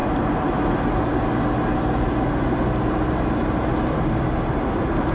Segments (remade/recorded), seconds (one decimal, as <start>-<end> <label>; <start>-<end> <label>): 0.0-5.1 recorded